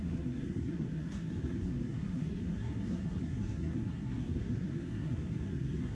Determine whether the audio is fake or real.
fake